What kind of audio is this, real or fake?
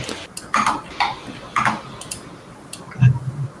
real